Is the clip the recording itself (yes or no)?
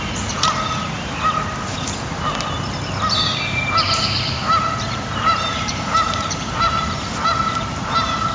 no